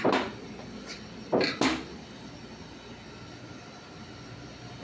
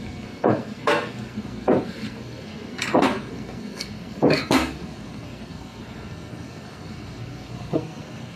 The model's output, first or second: second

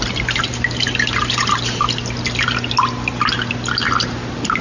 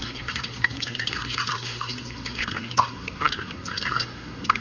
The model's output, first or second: second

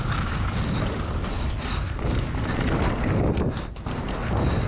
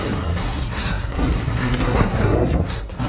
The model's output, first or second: second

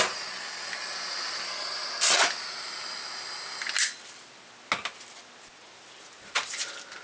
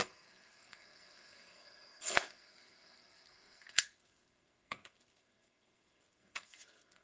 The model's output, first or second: second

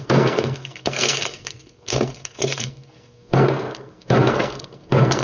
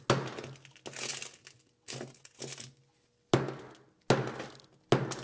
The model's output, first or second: first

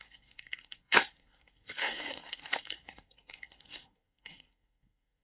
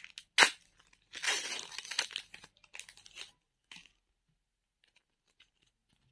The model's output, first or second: first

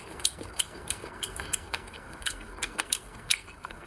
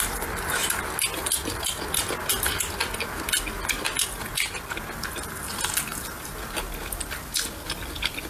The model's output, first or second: first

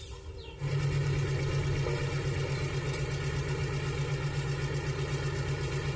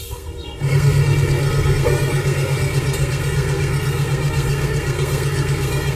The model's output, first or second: second